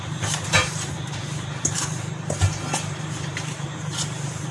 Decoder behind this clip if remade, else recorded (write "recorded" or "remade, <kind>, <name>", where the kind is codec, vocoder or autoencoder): remade, vocoder, BigVGAN v2